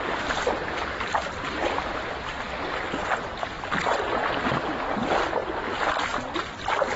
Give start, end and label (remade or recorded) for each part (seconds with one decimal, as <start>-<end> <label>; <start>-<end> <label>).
0.0-0.8 recorded; 0.8-2.0 remade; 2.0-7.0 recorded